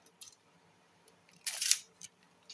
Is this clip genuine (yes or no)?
no